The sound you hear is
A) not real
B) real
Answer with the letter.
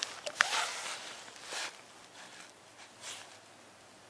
B